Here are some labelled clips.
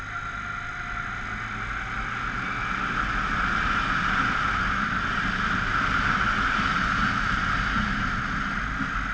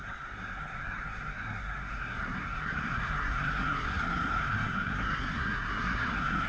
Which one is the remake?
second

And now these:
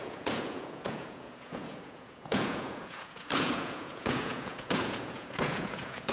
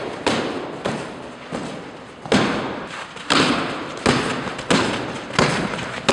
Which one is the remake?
first